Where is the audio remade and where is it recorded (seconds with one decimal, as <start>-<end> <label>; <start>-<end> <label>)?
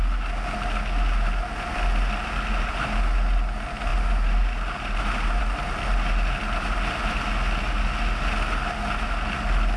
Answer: 0.0-9.8 recorded